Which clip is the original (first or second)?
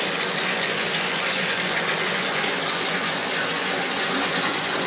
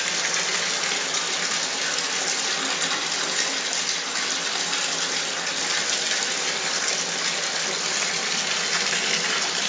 second